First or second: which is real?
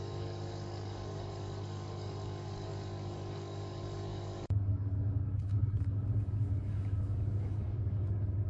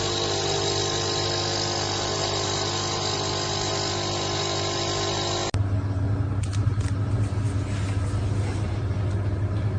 second